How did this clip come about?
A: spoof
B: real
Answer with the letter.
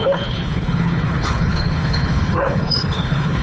A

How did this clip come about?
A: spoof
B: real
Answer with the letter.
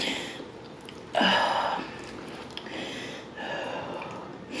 B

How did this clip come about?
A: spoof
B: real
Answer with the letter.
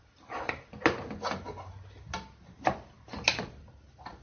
B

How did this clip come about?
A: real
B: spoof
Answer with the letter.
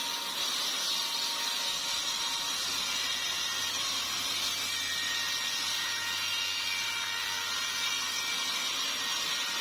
A